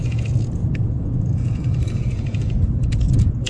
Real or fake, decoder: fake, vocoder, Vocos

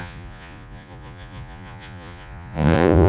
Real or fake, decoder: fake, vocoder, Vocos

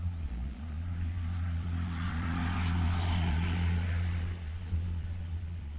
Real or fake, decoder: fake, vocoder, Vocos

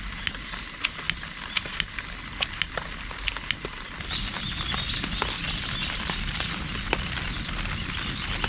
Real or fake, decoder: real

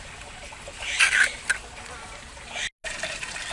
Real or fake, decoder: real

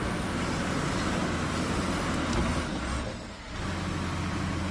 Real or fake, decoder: real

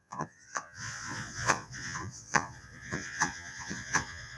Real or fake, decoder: fake, vocoder, Vocos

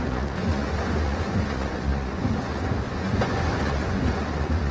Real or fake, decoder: fake, vocoder, Vocos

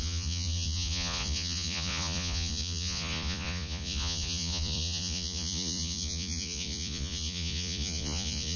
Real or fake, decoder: fake, vocoder, Vocos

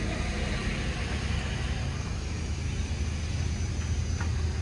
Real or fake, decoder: real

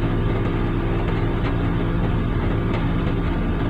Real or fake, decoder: real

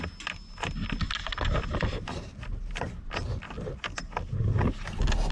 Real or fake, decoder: real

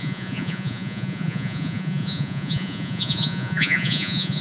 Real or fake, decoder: fake, vocoder, Vocos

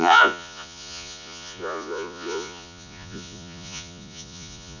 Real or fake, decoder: fake, vocoder, Vocos